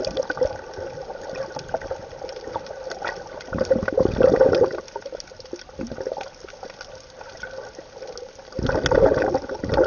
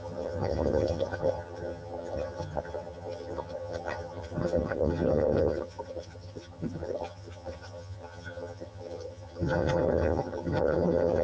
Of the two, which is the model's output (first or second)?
second